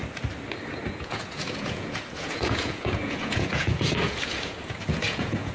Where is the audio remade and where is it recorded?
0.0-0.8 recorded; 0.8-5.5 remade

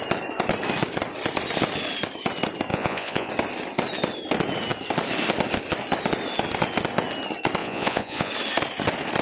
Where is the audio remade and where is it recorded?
0.0-2.7 recorded; 2.7-3.3 remade; 3.3-7.6 recorded; 7.6-8.3 remade; 8.3-9.2 recorded